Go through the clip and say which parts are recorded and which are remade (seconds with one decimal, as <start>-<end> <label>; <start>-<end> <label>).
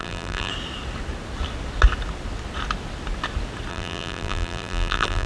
0.0-0.5 remade; 0.5-3.7 recorded; 3.7-5.3 remade